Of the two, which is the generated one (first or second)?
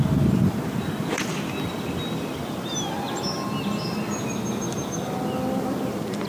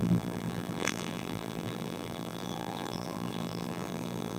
second